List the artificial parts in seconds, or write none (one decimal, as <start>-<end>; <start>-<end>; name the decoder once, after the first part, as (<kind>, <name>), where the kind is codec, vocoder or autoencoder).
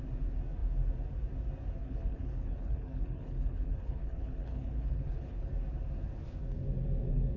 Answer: 1.8-5.5 (codec, HILCodec)